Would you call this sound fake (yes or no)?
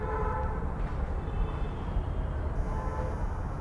no